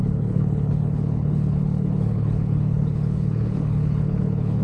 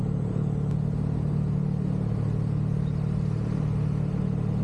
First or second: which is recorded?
second